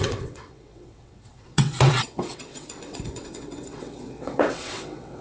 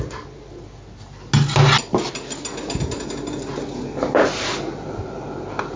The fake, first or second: first